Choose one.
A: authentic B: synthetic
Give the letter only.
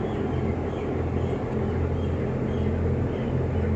A